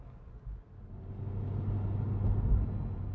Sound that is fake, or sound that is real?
real